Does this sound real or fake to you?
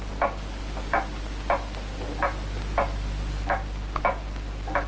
real